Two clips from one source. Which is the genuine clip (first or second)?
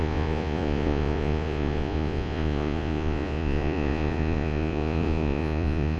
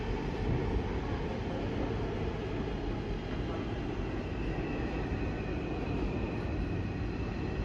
second